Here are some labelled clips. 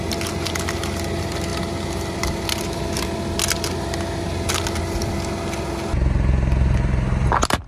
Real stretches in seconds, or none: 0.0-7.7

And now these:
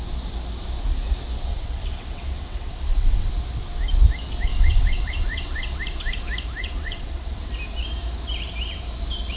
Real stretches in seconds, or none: 0.0-1.5; 3.3-4.5; 5.8-6.6; 7.5-9.4

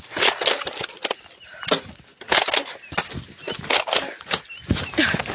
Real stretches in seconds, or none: 0.0-5.3

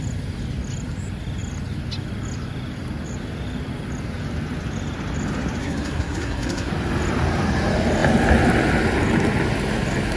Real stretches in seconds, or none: 0.0-5.6; 6.7-10.2

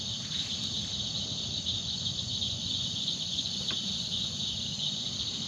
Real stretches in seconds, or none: 0.0-1.8; 5.1-5.5